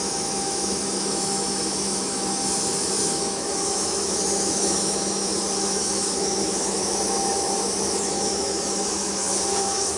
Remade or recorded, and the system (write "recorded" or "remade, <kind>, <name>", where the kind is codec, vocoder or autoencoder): remade, autoencoder, DAC-VAE